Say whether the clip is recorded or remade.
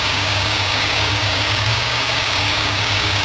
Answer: remade